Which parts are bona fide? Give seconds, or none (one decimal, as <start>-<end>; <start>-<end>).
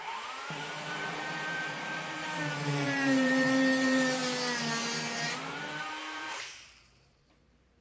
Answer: 4.2-5.8; 6.3-6.8